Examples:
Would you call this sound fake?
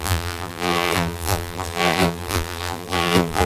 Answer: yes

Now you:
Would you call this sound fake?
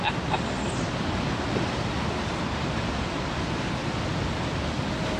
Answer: no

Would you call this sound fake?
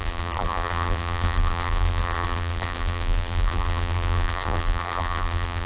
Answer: yes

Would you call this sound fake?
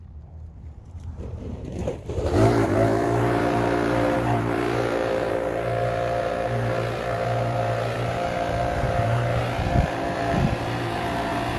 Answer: yes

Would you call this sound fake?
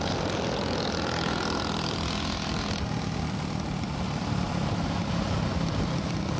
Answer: no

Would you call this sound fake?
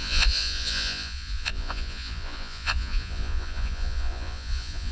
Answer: yes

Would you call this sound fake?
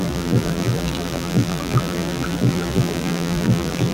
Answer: yes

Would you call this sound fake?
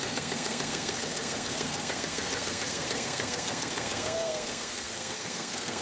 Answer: yes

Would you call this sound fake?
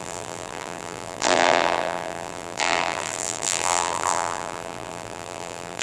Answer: yes